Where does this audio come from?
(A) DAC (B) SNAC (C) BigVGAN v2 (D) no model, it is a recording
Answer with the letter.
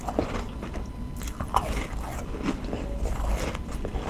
D